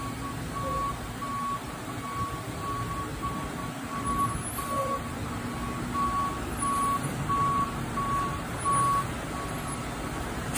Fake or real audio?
real